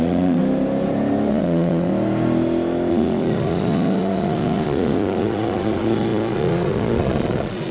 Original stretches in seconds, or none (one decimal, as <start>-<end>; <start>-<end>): 0.4-1.3; 1.9-2.9